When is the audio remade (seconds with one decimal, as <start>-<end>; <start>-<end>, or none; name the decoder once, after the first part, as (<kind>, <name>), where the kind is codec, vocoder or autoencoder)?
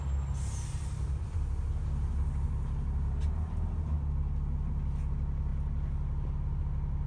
none